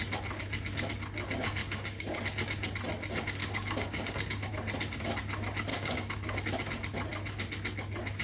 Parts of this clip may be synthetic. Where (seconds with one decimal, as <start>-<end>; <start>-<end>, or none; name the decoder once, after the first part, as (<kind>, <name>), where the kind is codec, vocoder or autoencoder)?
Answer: 1.6-2.2 (codec, DAC); 3.4-4.5; 5.7-6.4